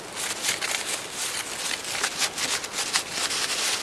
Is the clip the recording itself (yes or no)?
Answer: yes